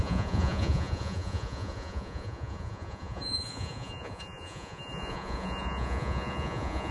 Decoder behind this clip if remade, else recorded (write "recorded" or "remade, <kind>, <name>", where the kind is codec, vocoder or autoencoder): remade, vocoder, Vocos